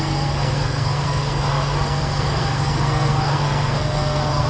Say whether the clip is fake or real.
fake